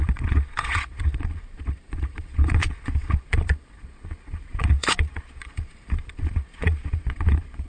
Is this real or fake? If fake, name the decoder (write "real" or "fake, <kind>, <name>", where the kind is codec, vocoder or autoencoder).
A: fake, vocoder, Vocos